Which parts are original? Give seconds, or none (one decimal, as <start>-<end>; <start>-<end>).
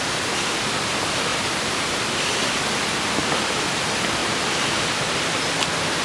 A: 0.0-1.3; 2.0-4.2; 4.9-6.0